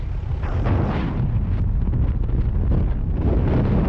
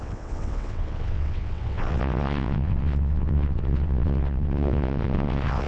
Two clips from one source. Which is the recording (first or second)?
first